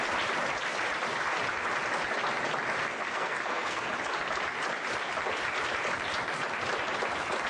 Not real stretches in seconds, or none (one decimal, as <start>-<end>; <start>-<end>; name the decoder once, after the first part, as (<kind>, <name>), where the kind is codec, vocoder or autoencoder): 2.8-3.9 (codec, SNAC)